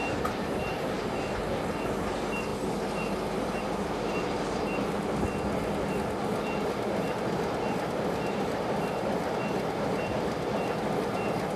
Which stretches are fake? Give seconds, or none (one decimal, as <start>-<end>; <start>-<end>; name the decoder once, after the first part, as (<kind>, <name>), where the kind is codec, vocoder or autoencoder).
0.0-0.9 (vocoder, BigVGAN v2)